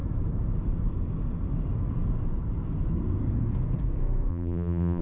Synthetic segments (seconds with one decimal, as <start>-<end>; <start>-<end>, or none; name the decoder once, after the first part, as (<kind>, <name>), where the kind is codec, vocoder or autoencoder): 4.3-5.0 (vocoder, BigVGAN v2)